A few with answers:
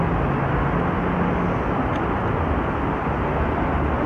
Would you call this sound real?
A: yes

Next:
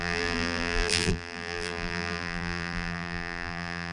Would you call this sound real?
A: no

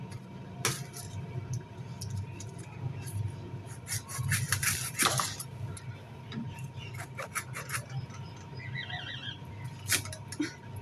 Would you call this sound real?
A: yes